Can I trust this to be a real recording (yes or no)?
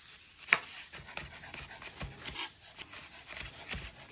yes